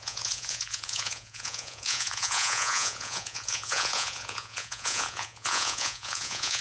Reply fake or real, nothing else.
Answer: fake